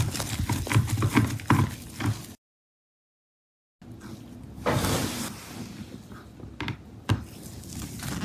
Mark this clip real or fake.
real